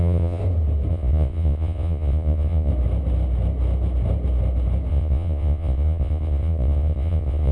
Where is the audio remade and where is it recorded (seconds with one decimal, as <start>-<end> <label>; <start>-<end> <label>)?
0.0-0.4 remade; 0.4-0.9 recorded; 0.9-2.7 remade; 2.7-4.9 recorded; 4.9-7.5 remade